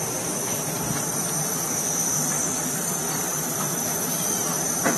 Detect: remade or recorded remade